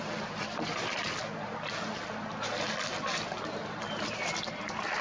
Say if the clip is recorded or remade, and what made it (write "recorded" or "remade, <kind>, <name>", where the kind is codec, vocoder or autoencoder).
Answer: recorded